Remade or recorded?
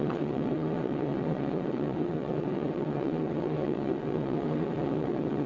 remade